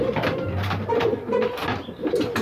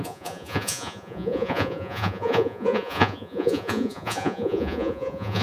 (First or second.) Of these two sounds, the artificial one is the second